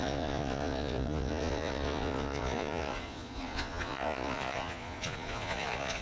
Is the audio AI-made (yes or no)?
yes